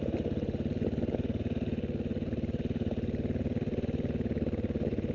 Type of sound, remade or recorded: recorded